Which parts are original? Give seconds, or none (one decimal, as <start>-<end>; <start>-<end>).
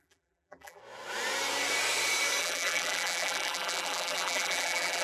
0.8-2.4